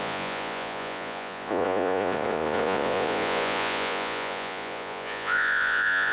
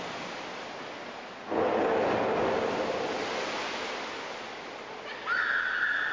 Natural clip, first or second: second